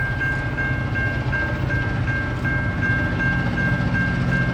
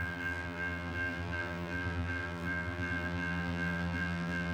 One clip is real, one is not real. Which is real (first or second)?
first